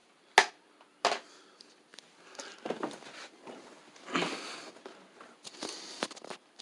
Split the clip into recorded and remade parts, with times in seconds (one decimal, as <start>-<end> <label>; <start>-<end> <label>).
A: 0.0-6.6 recorded